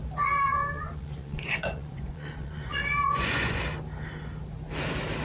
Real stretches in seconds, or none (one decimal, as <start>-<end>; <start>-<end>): 0.0-0.5; 3.6-5.2